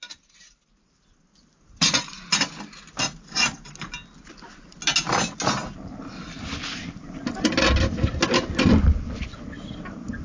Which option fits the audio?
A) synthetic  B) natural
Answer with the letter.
B